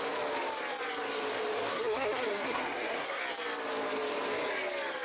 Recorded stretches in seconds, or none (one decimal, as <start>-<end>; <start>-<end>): 0.0-1.7; 3.2-5.0